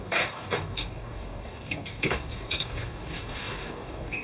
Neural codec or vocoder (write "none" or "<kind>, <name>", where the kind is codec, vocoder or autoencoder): codec, DAC